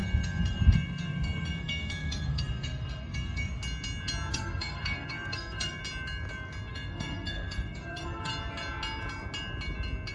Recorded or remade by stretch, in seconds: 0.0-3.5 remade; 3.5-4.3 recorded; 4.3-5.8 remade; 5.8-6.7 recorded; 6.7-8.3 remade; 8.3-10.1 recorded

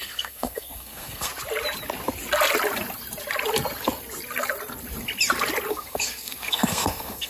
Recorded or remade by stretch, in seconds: 0.0-1.3 remade; 1.3-5.7 recorded; 5.7-7.3 remade